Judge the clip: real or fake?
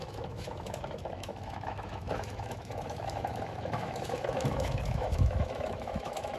fake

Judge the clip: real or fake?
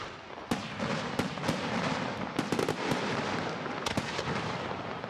real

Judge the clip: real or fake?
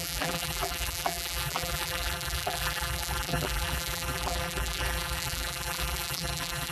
fake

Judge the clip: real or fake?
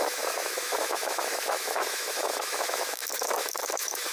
fake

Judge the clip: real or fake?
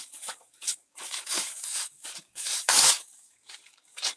fake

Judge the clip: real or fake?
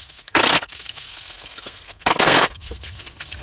fake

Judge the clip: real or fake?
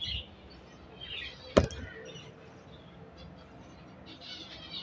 real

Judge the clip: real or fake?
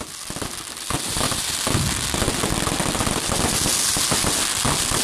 real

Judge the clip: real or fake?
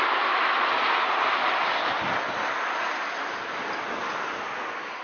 real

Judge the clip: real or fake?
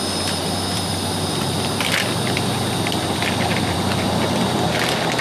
fake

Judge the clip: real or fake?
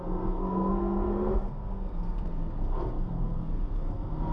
fake